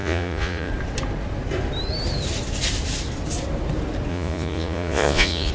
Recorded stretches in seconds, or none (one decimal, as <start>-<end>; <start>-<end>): 0.7-4.1